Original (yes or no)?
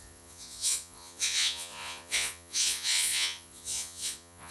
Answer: no